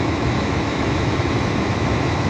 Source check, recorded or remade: remade